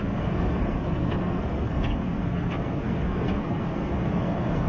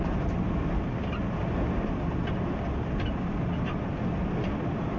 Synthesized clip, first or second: first